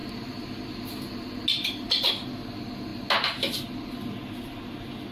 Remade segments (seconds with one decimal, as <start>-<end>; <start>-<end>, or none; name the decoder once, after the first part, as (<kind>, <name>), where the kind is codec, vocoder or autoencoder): none